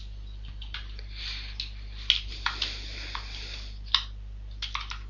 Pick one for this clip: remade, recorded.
recorded